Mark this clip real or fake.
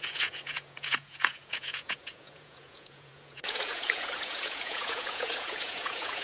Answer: fake